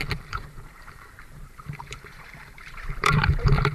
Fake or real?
fake